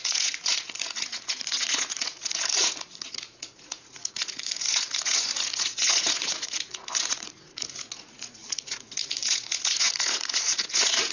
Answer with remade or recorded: remade